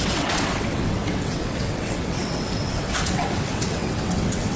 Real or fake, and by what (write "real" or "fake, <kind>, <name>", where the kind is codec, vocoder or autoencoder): fake, vocoder, WaveNeXt